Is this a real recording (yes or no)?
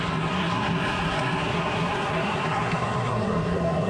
no